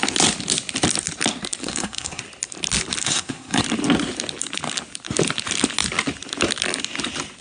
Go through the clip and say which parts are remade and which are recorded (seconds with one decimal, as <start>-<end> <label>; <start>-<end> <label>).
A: 0.0-1.6 recorded; 1.6-2.2 remade; 2.2-3.0 recorded; 3.0-3.6 remade; 3.6-7.4 recorded

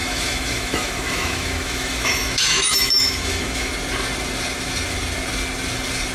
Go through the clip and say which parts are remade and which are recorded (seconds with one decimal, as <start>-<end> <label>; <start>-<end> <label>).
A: 0.0-3.7 remade; 3.7-6.1 recorded